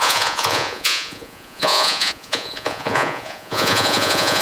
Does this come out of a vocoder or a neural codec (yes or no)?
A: yes